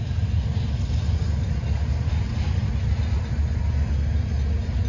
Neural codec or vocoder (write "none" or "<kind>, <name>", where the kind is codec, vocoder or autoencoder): none